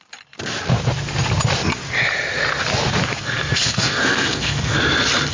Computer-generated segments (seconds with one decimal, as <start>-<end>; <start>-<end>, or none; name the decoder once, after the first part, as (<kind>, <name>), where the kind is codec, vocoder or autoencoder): 3.1-4.8 (codec, SNAC)